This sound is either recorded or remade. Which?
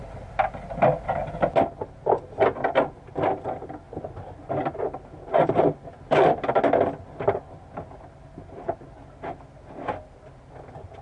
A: recorded